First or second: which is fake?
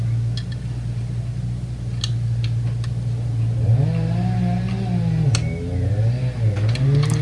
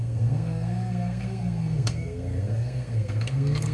second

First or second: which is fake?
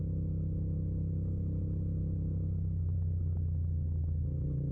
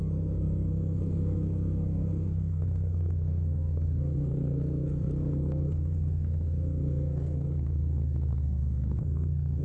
second